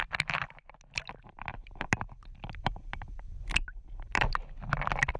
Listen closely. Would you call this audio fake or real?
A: real